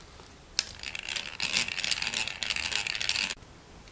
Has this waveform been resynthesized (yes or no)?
no